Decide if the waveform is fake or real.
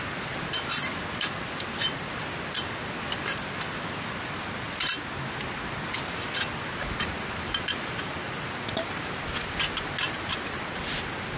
real